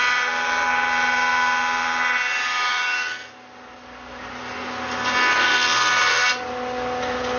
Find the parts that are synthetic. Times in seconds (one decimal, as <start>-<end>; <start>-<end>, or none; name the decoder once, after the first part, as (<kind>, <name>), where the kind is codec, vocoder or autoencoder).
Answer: none